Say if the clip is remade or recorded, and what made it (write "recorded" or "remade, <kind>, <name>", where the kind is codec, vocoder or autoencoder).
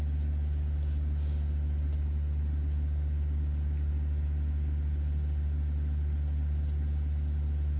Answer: recorded